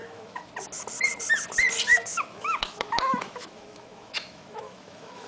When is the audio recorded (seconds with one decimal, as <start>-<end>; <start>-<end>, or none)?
0.5-1.9